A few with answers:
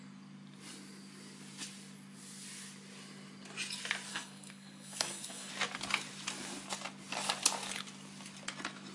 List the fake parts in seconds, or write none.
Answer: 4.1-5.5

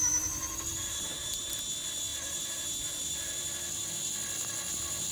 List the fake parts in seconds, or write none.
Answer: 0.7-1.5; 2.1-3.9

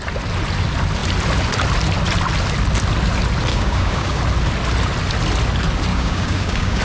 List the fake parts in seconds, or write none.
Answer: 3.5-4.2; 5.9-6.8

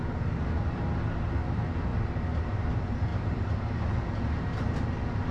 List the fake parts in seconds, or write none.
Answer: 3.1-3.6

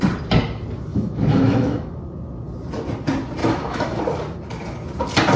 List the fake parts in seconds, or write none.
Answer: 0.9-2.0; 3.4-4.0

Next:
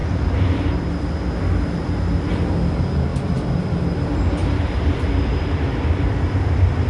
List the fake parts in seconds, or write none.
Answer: 0.0-0.7; 3.1-3.8; 4.4-6.9